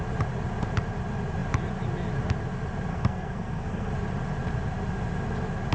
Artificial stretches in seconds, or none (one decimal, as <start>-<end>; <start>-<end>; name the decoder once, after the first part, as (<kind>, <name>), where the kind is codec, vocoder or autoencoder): 2.9-3.9 (codec, SNAC)